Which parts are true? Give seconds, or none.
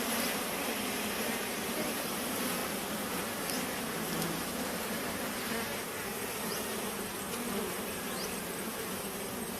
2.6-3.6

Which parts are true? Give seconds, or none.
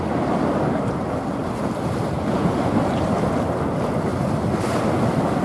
0.0-1.4; 3.2-5.4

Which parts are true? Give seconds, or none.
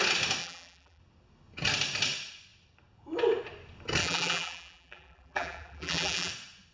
0.0-0.4; 1.0-4.0; 6.3-6.7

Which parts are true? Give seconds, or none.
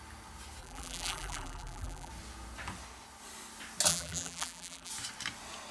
0.0-0.6; 2.1-3.9; 4.9-5.7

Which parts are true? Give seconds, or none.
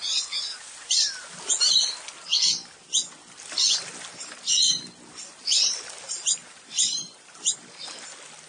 0.0-6.4; 7.5-8.5